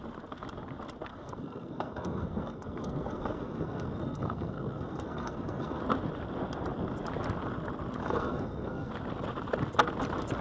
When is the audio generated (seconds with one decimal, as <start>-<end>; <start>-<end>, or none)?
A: 1.1-5.8; 8.0-8.9